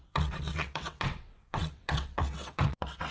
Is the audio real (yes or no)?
no